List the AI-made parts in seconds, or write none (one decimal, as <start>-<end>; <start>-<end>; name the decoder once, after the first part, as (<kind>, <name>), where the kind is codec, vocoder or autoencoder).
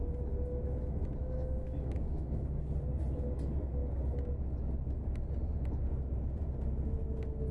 1.2-2.4 (autoencoder, DAC-VAE)